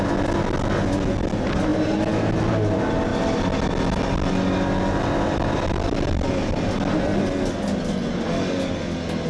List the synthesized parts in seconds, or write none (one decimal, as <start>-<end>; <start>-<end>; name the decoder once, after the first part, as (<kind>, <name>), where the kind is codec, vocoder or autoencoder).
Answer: none